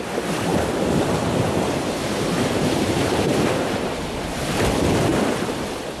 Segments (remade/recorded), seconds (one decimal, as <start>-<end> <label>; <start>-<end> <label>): 0.0-0.5 recorded; 0.5-4.1 remade; 4.1-6.0 recorded